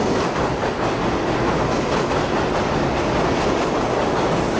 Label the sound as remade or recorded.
recorded